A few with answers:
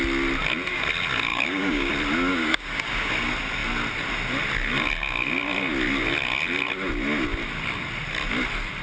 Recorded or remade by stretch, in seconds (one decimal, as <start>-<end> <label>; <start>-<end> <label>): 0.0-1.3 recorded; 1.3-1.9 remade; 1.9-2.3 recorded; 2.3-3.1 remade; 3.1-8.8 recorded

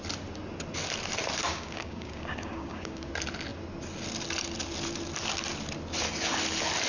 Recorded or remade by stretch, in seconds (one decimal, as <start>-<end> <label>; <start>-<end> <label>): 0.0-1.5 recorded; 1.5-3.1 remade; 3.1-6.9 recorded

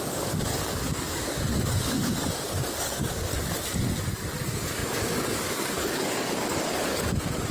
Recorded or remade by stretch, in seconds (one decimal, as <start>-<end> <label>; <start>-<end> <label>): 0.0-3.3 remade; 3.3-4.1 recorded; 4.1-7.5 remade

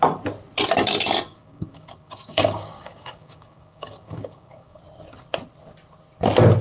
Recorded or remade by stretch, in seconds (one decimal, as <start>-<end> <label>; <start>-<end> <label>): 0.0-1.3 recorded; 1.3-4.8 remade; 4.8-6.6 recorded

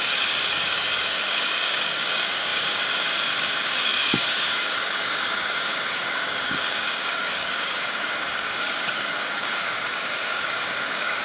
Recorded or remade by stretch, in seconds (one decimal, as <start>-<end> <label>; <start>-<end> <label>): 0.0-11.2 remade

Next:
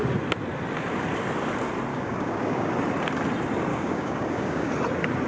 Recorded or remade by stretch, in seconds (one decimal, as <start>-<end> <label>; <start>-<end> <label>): 0.0-1.9 recorded; 1.9-2.7 remade; 2.7-3.7 recorded; 3.7-4.7 remade; 4.7-5.3 recorded

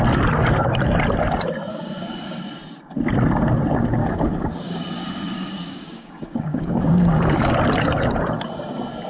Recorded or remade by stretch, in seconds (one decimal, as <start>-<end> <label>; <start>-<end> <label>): 0.0-1.7 recorded; 1.7-2.4 remade; 2.4-4.0 recorded; 4.0-7.5 remade; 7.5-9.1 recorded

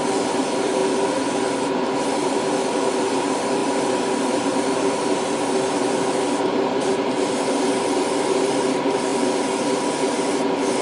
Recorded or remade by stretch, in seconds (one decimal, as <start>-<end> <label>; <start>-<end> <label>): 0.0-10.8 recorded